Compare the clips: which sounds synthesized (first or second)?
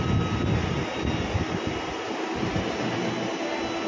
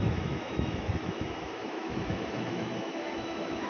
second